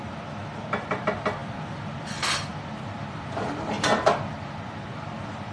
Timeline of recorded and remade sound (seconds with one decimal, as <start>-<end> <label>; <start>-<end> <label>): 0.0-1.4 recorded; 1.4-2.1 remade; 2.1-2.5 recorded; 2.5-4.6 remade; 4.6-5.5 recorded